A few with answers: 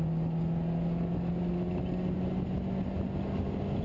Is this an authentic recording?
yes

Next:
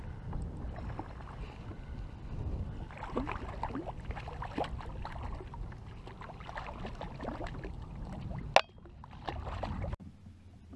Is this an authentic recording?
yes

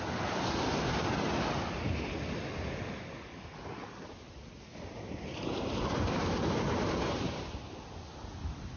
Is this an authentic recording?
yes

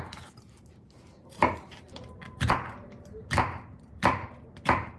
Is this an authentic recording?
no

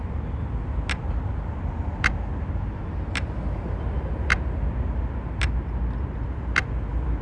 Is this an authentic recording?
yes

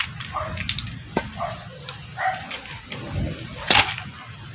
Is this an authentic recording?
yes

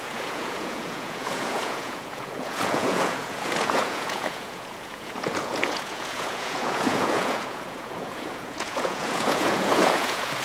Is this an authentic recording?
no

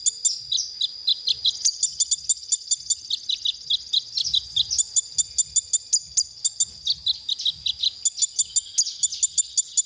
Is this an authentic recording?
yes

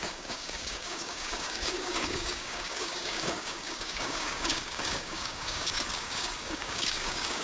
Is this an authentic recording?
no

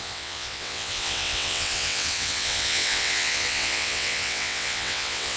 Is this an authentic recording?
no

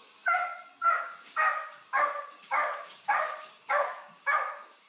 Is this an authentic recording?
no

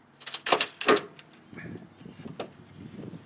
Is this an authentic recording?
yes